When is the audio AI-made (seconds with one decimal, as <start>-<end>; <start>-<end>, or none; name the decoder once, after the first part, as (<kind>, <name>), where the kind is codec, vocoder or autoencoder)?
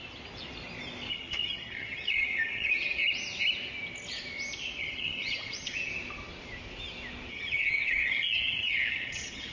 1.1-3.0 (vocoder, HiFi-GAN); 4.8-5.9; 7.3-9.5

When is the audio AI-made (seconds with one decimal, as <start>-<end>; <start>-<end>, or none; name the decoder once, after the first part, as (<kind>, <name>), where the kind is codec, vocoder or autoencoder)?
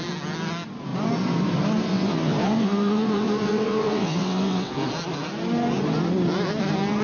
1.9-4.8 (vocoder, WaveNeXt)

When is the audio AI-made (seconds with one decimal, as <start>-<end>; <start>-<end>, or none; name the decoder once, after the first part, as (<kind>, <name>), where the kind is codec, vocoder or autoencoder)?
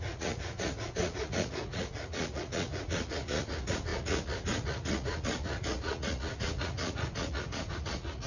0.0-8.3 (vocoder, Vocos)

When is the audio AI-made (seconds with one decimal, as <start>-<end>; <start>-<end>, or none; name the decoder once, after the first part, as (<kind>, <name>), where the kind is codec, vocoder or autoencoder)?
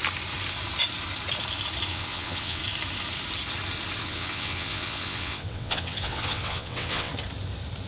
1.9-2.6 (vocoder, WaveNeXt); 4.0-7.1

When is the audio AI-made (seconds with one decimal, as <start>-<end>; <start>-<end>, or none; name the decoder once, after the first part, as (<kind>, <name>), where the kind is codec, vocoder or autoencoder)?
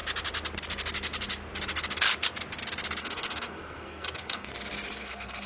3.0-4.5 (codec, SNAC); 5.0-5.5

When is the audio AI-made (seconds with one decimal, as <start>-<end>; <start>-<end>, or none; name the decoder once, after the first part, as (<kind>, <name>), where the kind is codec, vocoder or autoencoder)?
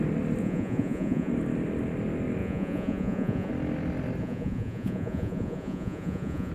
0.4-1.3 (vocoder, Vocos); 2.4-3.5; 4.2-6.5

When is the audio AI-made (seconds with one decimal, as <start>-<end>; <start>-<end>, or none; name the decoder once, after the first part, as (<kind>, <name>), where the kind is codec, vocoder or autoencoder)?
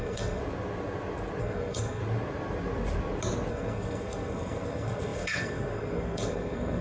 0.0-0.4 (codec, SNAC); 1.4-2.0; 3.5-6.8